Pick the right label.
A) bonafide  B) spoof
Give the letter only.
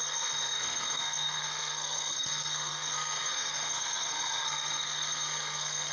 B